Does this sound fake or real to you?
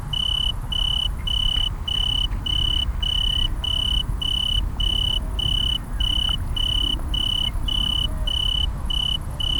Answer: real